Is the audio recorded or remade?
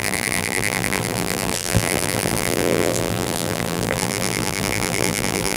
remade